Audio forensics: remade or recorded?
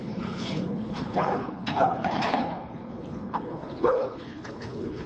remade